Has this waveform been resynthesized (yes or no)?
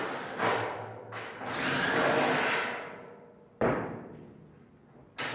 yes